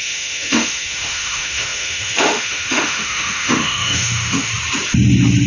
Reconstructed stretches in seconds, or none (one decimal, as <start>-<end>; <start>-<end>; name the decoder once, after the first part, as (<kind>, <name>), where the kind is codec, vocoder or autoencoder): 0.0-4.5 (autoencoder, DAC-VAE)